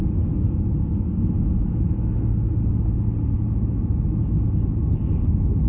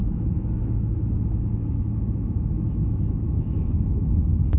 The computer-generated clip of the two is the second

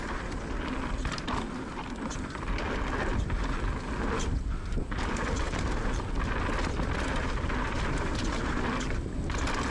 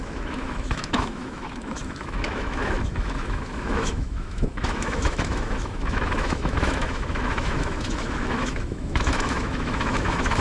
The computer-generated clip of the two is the second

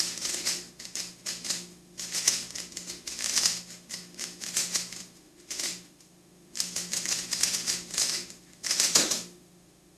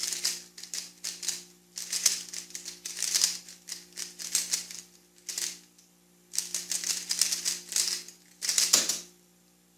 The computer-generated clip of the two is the first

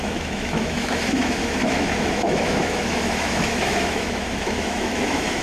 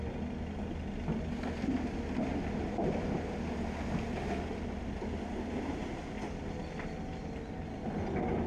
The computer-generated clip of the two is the first